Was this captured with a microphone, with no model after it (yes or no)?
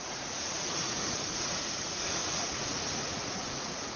no